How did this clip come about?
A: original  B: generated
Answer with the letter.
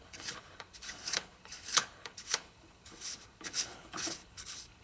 B